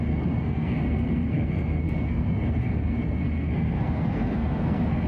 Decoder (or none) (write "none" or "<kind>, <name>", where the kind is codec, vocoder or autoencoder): codec, SNAC